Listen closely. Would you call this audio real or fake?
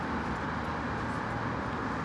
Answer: real